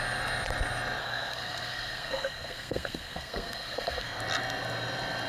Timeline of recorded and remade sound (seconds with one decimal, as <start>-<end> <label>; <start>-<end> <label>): 0.0-1.0 recorded; 1.0-4.2 remade; 4.2-5.3 recorded